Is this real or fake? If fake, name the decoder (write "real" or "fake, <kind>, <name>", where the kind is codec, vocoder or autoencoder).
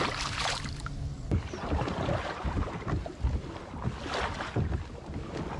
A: real